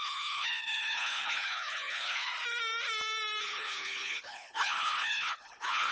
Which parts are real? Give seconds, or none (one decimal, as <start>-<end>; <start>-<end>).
2.3-3.4